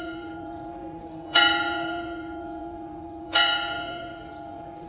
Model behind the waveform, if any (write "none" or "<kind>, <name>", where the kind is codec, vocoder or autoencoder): vocoder, Vocos